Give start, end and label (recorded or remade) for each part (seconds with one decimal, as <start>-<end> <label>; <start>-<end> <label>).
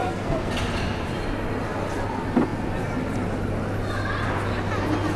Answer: 0.0-0.5 remade; 0.5-5.2 recorded